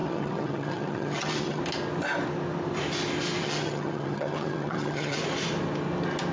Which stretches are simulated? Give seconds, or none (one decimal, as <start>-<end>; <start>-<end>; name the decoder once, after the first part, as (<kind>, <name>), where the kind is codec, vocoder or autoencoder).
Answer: 0.0-1.6 (vocoder, HiFi-GAN); 3.4-5.2